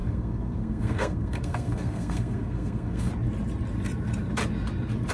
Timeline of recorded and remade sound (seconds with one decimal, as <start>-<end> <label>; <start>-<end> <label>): 0.0-3.1 remade; 3.1-5.1 recorded